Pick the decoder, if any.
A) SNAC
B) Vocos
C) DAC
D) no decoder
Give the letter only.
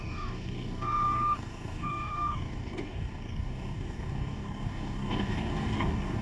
C